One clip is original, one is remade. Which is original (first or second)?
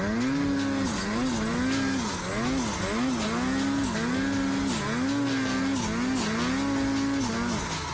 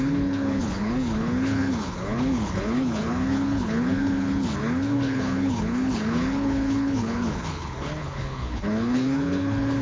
first